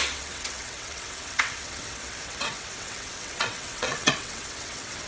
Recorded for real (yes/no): no